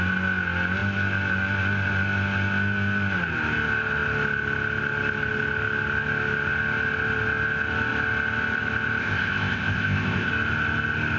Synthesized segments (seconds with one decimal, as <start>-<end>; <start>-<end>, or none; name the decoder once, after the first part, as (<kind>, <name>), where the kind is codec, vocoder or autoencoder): 9.0-10.3 (codec, ZipCodec)